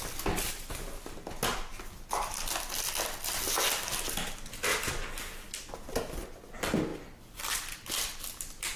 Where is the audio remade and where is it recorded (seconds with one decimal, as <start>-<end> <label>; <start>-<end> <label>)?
0.0-4.7 recorded; 4.7-5.2 remade; 5.2-6.9 recorded; 6.9-8.2 remade; 8.2-8.8 recorded